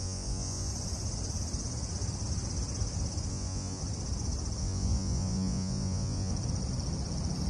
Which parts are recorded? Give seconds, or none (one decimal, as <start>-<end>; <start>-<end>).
0.7-3.3; 3.8-4.6; 6.3-7.5